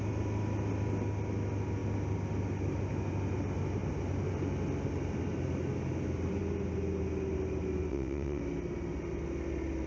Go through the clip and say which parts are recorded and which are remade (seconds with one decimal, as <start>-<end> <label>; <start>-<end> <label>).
0.0-7.9 recorded; 7.9-8.4 remade; 8.4-9.9 recorded